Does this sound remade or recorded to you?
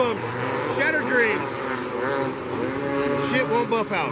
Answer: recorded